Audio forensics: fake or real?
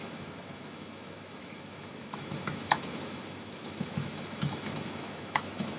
fake